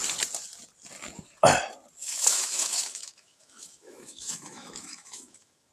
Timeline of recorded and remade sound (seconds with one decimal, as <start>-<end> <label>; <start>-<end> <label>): 0.0-2.0 recorded; 2.0-5.7 remade